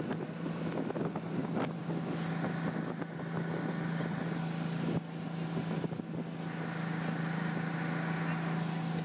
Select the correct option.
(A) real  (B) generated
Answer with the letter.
A